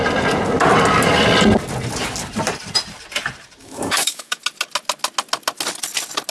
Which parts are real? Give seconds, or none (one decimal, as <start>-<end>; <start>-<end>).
0.0-3.6; 4.4-6.3